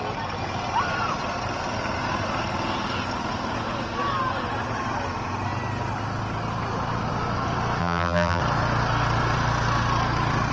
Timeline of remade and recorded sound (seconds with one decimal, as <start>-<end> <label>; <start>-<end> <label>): 0.0-7.8 recorded; 7.8-8.4 remade; 8.4-10.5 recorded